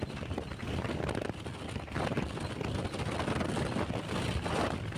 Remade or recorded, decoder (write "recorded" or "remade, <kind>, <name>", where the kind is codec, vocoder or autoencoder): recorded